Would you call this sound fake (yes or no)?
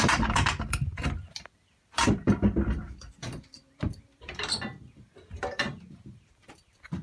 yes